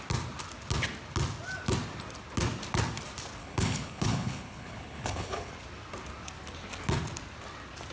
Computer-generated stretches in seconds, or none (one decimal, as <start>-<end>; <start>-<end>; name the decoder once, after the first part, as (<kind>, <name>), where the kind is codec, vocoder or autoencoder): 3.4-5.5 (codec, HILCodec)